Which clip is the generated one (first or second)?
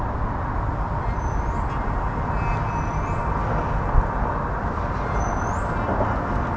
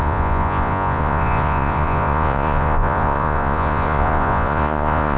second